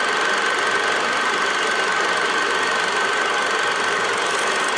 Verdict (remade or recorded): recorded